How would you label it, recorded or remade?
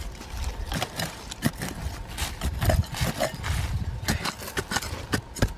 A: recorded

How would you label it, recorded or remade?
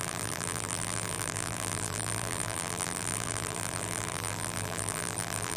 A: remade